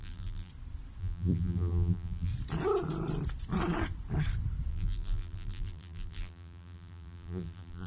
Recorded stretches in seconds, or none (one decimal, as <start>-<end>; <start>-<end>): 0.5-1.0; 2.3-4.7